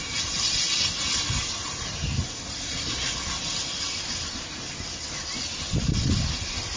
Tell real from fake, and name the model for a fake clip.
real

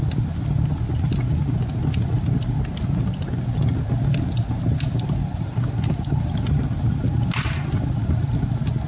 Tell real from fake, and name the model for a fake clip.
real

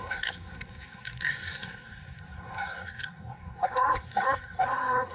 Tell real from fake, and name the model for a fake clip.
fake, codec, SNAC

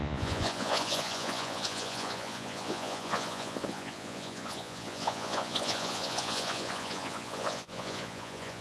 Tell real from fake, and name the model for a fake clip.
fake, vocoder, Vocos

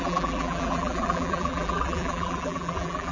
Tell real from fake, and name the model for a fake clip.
fake, vocoder, BigVGAN v2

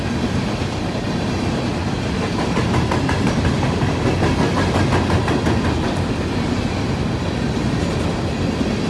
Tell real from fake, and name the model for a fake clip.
real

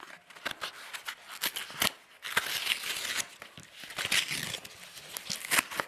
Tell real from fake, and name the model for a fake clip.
real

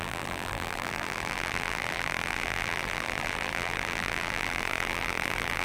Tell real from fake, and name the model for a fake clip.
fake, vocoder, BigVGAN v2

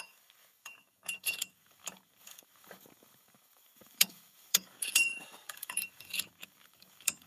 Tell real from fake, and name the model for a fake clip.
fake, codec, DAC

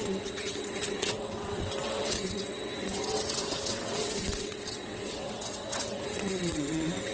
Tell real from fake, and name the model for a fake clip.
fake, vocoder, WaveNeXt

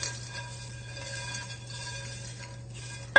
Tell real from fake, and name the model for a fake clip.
real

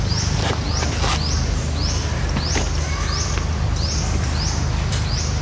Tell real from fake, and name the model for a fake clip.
real